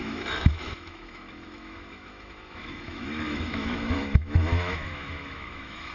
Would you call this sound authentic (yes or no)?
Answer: no